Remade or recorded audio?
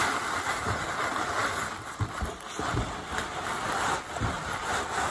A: recorded